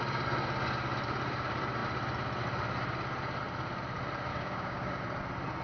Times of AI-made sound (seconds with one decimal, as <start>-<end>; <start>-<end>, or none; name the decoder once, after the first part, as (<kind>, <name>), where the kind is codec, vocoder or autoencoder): 4.3-5.0 (codec, DAC)